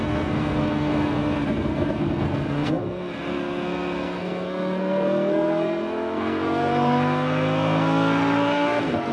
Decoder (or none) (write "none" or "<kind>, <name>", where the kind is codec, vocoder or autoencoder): codec, SNAC